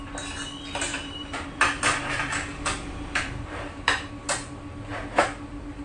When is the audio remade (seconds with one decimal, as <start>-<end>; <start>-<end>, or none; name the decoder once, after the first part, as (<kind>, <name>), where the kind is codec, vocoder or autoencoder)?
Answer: 0.9-4.1 (vocoder, BigVGAN v2)